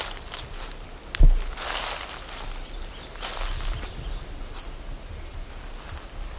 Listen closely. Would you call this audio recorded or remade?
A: recorded